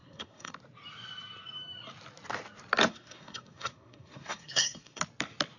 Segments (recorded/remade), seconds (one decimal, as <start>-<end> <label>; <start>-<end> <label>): 0.0-0.5 remade; 0.5-2.9 recorded; 2.9-5.0 remade; 5.0-5.6 recorded